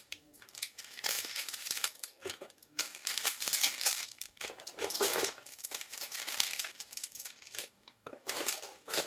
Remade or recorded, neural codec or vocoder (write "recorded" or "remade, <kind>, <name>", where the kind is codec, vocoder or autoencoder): remade, codec, DAC